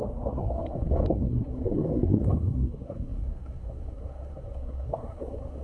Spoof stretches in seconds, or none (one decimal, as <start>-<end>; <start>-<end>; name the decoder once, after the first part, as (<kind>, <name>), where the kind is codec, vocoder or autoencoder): 0.0-5.6 (codec, SNAC)